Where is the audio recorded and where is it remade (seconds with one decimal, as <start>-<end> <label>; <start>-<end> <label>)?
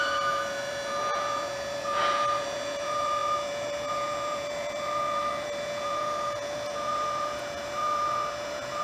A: 0.0-8.8 remade